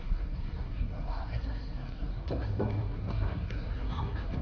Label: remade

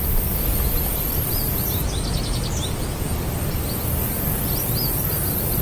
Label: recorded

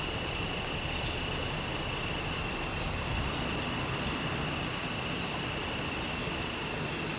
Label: recorded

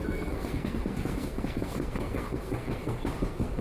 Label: remade